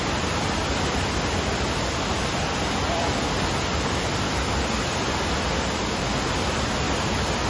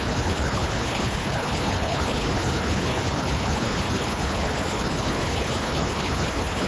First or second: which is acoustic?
first